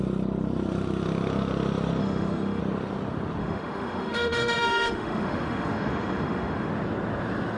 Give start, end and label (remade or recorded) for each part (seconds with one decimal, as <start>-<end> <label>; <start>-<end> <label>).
0.0-2.0 recorded; 2.0-2.6 remade; 2.6-3.4 recorded; 3.4-6.7 remade; 6.7-7.6 recorded